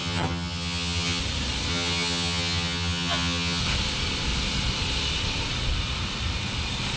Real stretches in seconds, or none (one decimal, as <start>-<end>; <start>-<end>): 1.2-1.7; 3.6-7.0